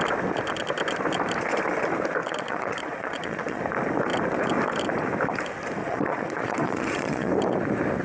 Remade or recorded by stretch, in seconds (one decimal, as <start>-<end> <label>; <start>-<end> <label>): 0.0-2.2 recorded; 2.2-3.6 remade; 3.6-5.8 recorded; 5.8-7.3 remade; 7.3-8.0 recorded